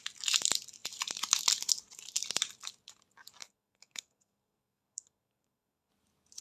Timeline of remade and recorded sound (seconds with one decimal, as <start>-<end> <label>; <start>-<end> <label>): 0.0-3.4 recorded; 3.4-5.9 remade; 5.9-6.4 recorded